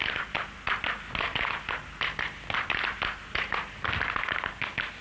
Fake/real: real